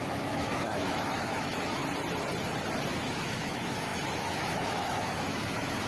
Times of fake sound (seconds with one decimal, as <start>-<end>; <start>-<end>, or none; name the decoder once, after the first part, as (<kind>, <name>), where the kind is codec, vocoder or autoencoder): 0.0-1.8 (autoencoder, DAC-VAE); 2.9-5.9